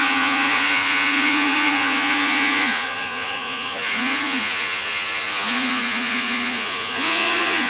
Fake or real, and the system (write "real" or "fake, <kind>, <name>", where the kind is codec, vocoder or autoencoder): fake, vocoder, Vocos